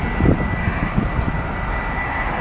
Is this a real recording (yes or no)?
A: yes